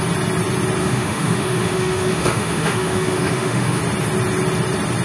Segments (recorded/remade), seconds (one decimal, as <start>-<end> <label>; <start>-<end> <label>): 0.0-0.8 recorded; 0.8-3.8 remade; 3.8-5.0 recorded